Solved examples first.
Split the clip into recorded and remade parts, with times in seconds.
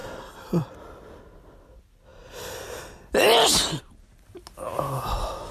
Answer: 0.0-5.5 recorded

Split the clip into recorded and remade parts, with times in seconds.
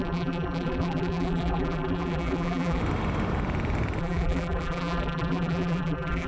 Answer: 0.0-2.8 remade; 2.8-4.0 recorded; 4.0-6.3 remade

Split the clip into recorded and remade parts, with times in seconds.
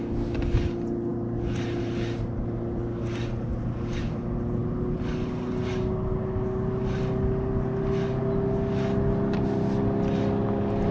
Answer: 0.0-10.9 recorded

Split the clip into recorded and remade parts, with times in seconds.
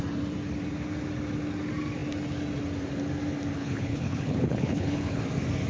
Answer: 0.0-3.5 recorded; 3.5-5.2 remade; 5.2-5.7 recorded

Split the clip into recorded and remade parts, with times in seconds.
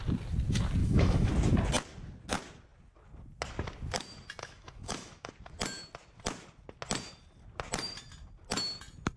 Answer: 0.0-0.8 recorded; 0.8-1.3 remade; 1.3-4.4 recorded; 4.4-5.3 remade; 5.3-9.2 recorded